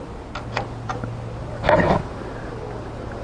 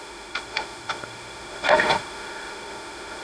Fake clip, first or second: second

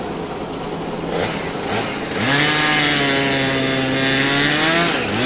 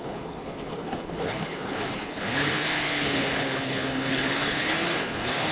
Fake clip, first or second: second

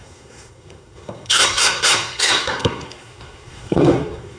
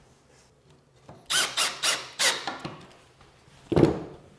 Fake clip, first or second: first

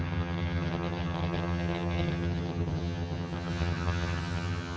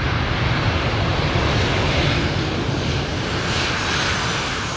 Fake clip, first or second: first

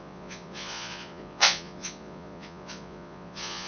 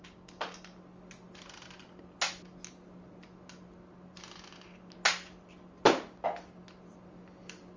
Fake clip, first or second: first